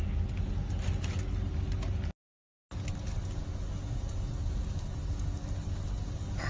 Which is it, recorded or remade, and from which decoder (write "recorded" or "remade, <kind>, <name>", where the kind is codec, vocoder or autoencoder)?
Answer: recorded